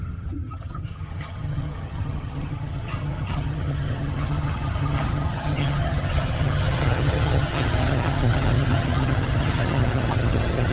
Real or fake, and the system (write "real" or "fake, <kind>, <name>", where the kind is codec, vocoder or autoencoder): fake, vocoder, HiFi-GAN